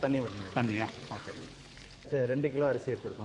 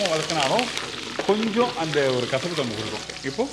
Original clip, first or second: second